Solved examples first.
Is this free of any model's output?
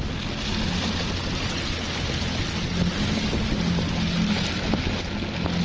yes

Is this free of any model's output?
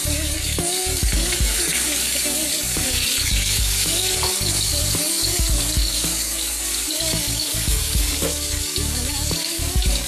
no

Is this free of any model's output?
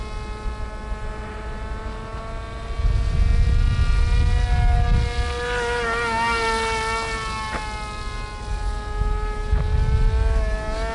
yes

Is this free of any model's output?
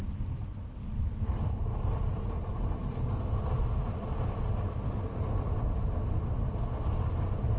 yes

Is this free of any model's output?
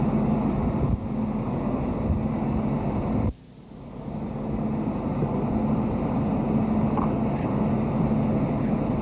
yes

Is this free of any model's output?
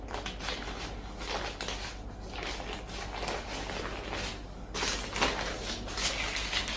yes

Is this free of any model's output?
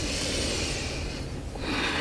yes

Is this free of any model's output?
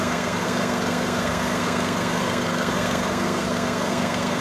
no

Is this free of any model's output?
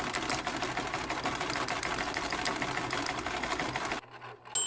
yes